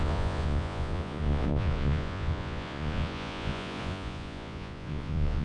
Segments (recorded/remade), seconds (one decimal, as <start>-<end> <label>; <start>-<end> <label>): 0.0-5.4 remade